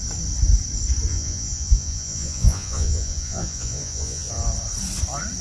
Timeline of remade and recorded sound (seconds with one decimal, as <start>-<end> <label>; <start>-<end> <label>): 0.0-1.1 recorded; 1.1-4.3 remade; 4.3-5.4 recorded